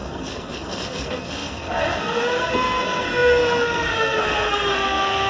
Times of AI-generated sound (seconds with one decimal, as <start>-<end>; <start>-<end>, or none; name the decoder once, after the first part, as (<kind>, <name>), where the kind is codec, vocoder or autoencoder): 0.0-5.3 (codec, SNAC)